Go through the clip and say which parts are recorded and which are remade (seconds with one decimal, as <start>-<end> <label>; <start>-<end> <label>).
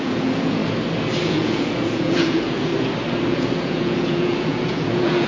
0.0-0.6 remade; 0.6-1.2 recorded; 1.2-2.7 remade; 2.7-3.3 recorded; 3.3-5.3 remade